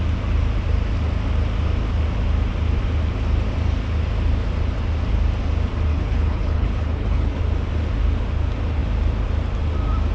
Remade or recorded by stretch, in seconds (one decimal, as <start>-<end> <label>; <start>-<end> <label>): 0.0-5.9 recorded; 5.9-7.4 remade; 7.4-10.1 recorded

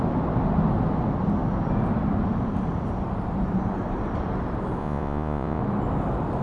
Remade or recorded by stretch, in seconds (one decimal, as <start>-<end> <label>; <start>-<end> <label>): 0.0-4.8 recorded; 4.8-5.6 remade; 5.6-6.4 recorded

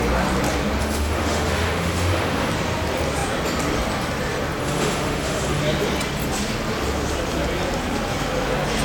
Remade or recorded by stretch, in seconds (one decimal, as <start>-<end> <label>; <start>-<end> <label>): 0.0-0.8 recorded; 0.8-2.5 remade; 2.5-4.6 recorded; 4.6-5.6 remade; 5.6-8.8 recorded

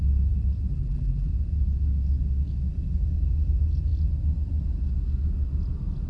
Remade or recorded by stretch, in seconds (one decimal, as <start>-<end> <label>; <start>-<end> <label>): 0.0-0.7 recorded; 0.7-1.3 remade; 1.3-6.1 recorded